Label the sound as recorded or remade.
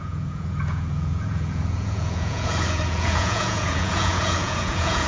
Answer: remade